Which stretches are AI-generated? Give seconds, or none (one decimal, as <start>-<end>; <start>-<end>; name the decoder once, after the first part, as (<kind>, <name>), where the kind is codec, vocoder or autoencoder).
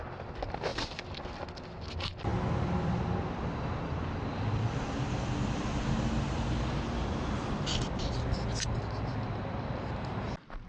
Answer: none